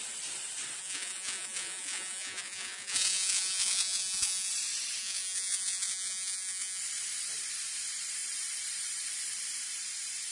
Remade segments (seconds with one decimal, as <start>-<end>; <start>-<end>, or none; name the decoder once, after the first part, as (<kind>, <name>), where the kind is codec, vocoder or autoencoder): 0.8-4.5 (vocoder, Vocos); 5.0-6.8